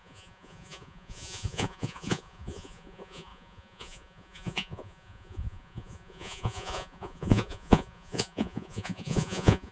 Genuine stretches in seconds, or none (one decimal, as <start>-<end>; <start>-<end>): none